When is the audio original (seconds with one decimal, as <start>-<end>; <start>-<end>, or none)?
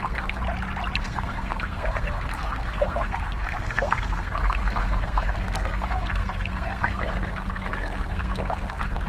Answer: 0.4-1.0